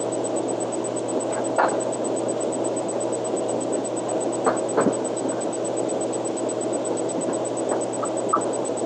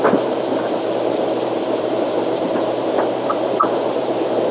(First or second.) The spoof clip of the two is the second